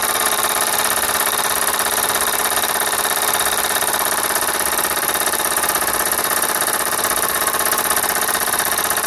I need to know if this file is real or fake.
fake